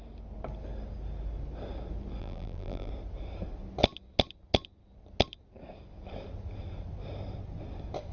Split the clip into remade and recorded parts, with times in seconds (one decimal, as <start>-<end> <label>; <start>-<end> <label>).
0.0-2.2 recorded; 2.2-2.9 remade; 2.9-8.1 recorded